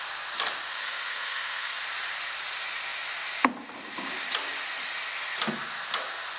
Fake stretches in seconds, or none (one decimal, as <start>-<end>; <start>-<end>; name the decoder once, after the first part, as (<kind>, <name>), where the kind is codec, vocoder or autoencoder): 0.7-1.8 (codec, SNAC)